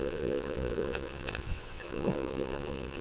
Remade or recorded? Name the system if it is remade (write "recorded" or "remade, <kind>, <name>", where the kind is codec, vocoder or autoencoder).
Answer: remade, vocoder, WaveNeXt